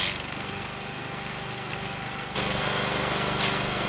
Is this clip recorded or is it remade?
remade